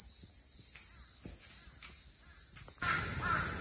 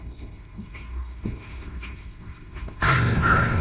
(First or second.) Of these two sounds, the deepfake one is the second